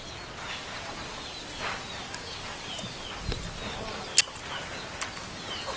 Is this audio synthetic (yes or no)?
no